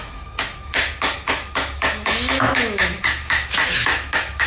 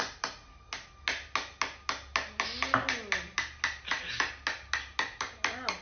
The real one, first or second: second